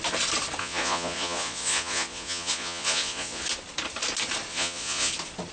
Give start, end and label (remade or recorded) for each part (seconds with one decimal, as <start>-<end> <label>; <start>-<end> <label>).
0.0-0.6 recorded; 0.6-3.4 remade; 3.4-4.5 recorded; 4.5-5.1 remade; 5.1-5.5 recorded